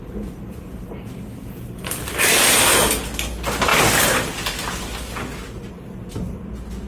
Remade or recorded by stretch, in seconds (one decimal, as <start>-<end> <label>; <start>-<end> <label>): 0.0-6.9 recorded